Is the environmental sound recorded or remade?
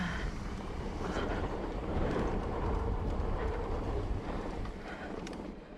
remade